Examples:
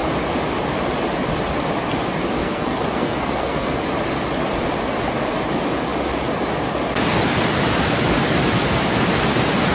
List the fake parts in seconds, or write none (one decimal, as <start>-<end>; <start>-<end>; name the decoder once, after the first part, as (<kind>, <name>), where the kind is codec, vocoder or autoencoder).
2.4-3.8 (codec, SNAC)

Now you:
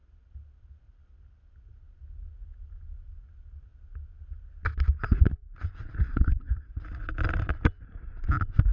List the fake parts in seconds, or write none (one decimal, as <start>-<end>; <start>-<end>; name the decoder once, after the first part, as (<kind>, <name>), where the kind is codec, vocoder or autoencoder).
6.0-6.7 (codec, SNAC)

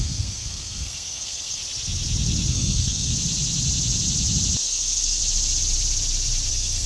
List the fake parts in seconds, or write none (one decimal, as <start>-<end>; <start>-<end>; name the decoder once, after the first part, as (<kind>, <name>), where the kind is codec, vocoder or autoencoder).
0.0-1.6 (codec, SNAC); 2.5-3.1; 4.6-5.2; 6.5-6.9

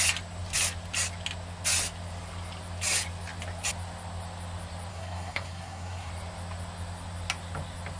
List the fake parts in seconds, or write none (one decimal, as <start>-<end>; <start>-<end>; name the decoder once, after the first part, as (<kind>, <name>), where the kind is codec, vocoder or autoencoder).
4.9-6.1 (codec, SNAC)

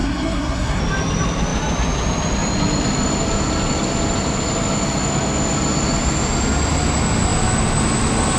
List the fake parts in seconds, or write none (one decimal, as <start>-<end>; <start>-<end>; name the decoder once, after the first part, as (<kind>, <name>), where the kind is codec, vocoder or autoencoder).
0.0-0.8 (codec, SNAC)

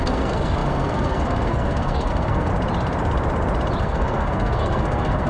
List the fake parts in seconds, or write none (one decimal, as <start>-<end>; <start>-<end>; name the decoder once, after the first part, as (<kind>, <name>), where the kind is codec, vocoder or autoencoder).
0.0-2.5 (codec, SNAC); 3.8-5.3

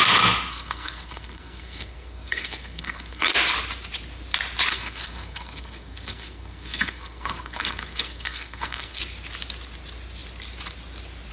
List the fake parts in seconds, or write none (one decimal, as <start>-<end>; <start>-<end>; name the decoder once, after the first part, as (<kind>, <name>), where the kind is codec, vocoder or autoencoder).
0.5-3.3 (codec, SNAC); 4.7-9.0

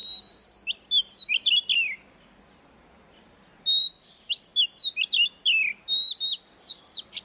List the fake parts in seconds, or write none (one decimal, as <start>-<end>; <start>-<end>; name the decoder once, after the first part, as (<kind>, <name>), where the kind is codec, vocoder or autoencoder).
none